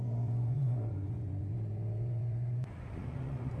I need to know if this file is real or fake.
fake